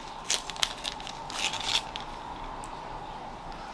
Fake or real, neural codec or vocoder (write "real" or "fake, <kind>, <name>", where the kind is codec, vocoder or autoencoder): real